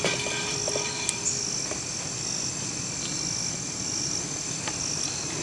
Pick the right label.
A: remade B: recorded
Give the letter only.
B